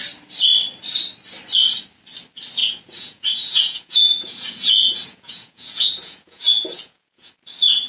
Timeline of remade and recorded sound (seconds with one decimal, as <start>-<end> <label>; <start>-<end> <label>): 0.0-2.6 recorded; 2.6-7.3 remade; 7.3-7.9 recorded